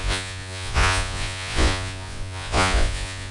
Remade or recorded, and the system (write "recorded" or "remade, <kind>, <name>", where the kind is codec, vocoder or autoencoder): remade, vocoder, Vocos